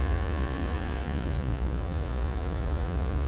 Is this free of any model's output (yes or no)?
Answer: no